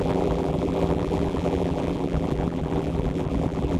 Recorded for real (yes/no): no